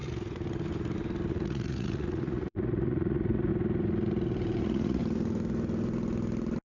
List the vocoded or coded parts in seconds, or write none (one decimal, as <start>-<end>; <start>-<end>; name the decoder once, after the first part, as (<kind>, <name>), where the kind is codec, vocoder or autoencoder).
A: 1.3-3.5 (vocoder, Vocos); 4.6-5.0